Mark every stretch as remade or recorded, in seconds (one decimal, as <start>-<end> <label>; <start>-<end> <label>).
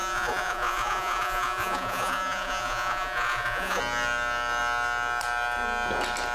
0.0-3.8 remade; 3.8-6.3 recorded